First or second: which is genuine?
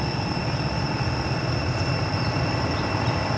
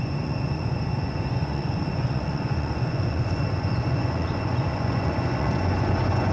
first